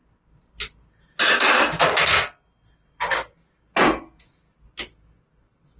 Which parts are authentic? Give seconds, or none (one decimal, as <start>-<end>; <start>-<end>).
0.0-5.8